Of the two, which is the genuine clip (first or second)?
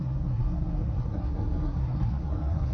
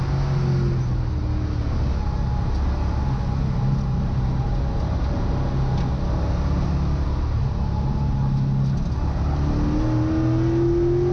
second